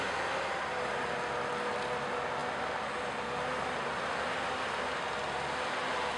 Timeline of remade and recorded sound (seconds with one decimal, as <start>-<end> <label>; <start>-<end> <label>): 0.0-6.2 recorded

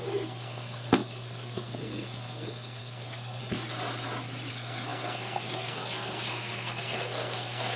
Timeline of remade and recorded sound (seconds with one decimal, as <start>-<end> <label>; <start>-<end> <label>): 0.0-3.4 remade; 3.4-4.5 recorded; 4.5-7.8 remade

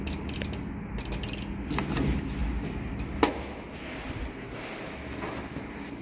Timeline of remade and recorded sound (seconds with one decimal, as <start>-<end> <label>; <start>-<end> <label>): 0.0-6.0 recorded

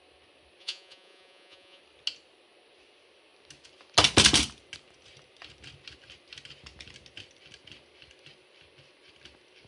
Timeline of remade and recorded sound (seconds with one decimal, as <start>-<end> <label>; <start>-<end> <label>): 0.0-0.6 recorded; 0.6-1.8 remade; 1.8-9.7 recorded

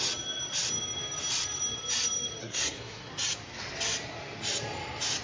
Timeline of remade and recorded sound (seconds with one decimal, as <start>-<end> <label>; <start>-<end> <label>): 0.0-2.4 recorded; 2.4-3.1 remade; 3.1-5.2 recorded